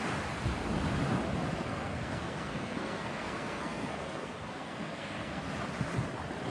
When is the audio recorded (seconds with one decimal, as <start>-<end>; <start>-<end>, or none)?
0.0-1.5; 5.4-6.5